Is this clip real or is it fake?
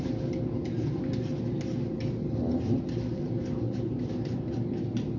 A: real